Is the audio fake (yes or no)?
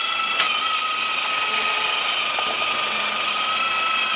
yes